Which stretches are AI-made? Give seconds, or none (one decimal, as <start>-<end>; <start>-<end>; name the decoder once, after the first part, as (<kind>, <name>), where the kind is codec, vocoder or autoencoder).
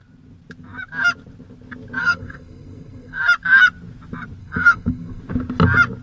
2.0-3.2 (codec, SNAC); 4.4-5.2